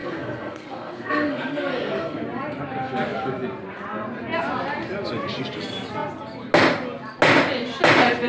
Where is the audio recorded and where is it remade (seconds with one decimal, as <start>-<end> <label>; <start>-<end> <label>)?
0.0-2.2 remade; 2.2-8.3 recorded